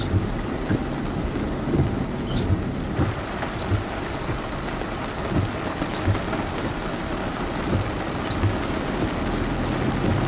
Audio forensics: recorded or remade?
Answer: recorded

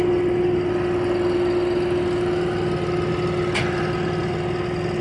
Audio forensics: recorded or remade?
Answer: recorded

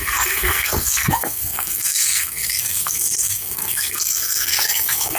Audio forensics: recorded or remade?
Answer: remade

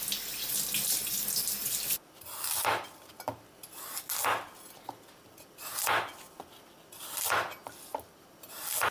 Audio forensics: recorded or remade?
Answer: recorded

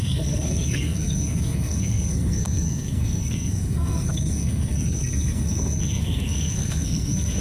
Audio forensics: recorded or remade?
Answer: remade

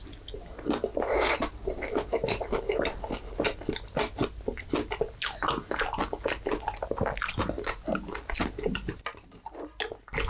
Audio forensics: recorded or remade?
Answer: recorded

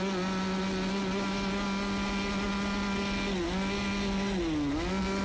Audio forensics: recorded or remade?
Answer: recorded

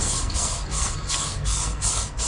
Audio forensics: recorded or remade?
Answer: remade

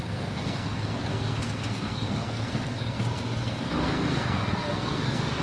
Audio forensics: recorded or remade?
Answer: remade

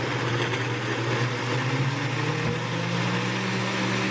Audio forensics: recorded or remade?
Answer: recorded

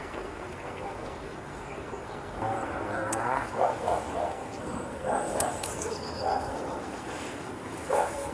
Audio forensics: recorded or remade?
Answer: remade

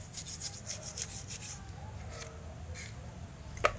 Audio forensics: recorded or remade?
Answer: recorded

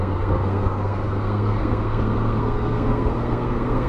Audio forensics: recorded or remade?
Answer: remade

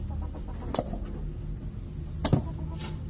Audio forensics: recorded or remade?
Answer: recorded